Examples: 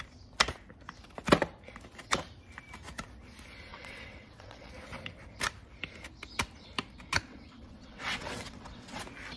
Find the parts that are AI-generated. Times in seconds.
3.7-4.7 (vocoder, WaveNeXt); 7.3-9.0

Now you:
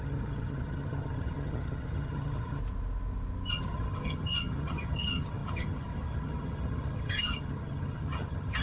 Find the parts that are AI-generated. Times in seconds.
0.0-2.6 (vocoder, HiFi-GAN); 3.5-8.6

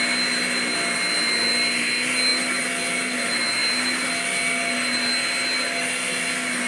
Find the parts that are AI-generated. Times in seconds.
none

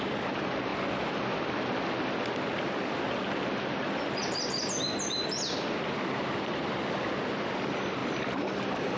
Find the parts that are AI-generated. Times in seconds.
none

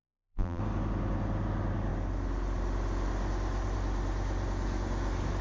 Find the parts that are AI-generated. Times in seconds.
0.0-0.6 (vocoder, BigVGAN v2)